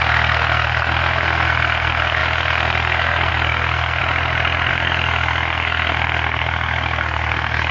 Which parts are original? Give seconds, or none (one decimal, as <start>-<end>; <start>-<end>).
4.0-4.7